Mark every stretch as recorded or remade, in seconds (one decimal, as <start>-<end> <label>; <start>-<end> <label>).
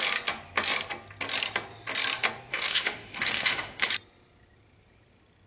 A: 0.0-2.5 recorded; 2.5-3.9 remade; 3.9-5.5 recorded